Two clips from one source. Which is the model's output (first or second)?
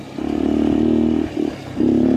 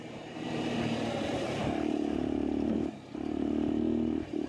second